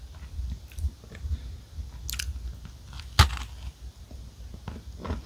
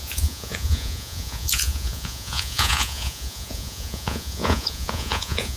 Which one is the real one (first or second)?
first